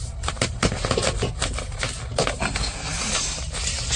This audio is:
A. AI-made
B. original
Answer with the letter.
B